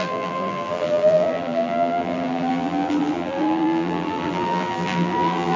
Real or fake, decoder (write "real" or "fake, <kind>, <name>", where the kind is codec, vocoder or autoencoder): fake, vocoder, BigVGAN v2